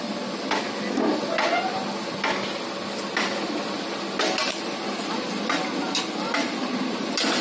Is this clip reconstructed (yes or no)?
no